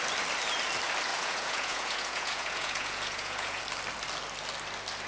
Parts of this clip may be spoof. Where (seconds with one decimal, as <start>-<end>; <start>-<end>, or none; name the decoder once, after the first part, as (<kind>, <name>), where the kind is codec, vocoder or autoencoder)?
1.1-3.6 (vocoder, Vocos)